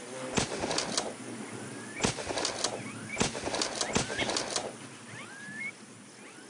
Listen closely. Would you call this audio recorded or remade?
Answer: recorded